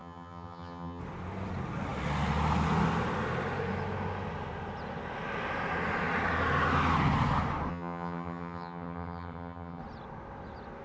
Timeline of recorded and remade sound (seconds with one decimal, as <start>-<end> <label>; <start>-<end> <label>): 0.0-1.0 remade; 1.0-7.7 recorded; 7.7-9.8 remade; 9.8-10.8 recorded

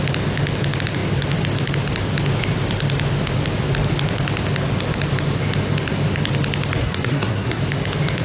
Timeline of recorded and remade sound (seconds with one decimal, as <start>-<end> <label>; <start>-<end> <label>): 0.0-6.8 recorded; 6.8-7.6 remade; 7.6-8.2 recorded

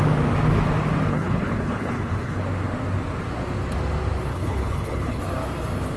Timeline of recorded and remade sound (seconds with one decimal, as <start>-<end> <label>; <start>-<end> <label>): 0.0-1.1 recorded; 1.1-2.4 remade; 2.4-4.3 recorded; 4.3-5.2 remade; 5.2-6.0 recorded